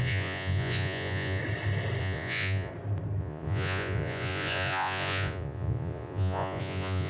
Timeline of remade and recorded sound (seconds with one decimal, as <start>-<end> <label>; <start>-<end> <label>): 0.0-1.4 remade; 1.4-2.0 recorded; 2.0-2.7 remade; 2.7-3.2 recorded; 3.2-7.1 remade